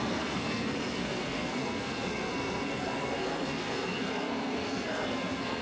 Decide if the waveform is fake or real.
fake